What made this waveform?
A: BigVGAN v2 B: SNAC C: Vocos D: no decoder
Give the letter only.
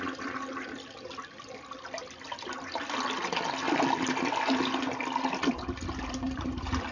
D